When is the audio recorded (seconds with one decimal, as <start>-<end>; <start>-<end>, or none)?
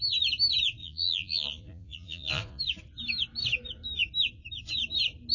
0.0-0.8; 2.6-5.3